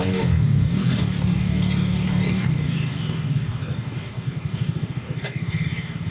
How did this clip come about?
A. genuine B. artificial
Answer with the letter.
B